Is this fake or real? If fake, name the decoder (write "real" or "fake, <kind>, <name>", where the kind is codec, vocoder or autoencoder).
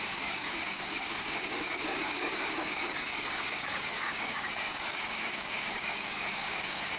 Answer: fake, codec, DAC